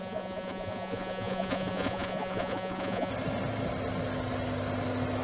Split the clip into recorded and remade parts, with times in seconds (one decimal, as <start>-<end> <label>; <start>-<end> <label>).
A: 0.0-3.1 remade; 3.1-5.2 recorded